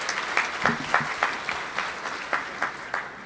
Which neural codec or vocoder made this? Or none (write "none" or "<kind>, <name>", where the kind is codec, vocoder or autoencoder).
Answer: none